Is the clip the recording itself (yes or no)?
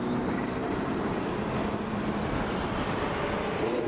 no